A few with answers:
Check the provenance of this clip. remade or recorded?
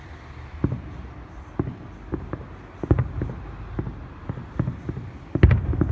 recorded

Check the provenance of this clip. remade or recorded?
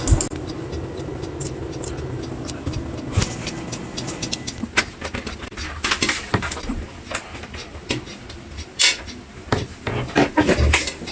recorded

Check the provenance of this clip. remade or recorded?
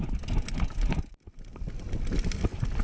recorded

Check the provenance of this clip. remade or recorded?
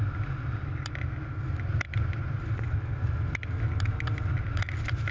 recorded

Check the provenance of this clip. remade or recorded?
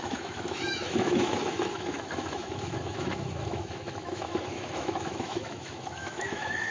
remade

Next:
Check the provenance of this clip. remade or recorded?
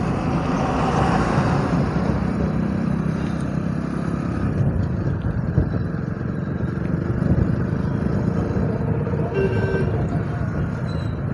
recorded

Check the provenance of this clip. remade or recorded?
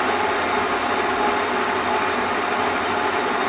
recorded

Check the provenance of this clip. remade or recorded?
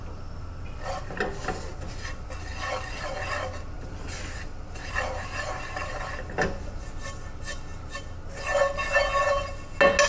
recorded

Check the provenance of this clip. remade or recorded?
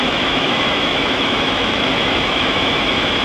remade